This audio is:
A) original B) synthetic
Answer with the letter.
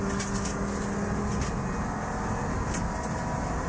A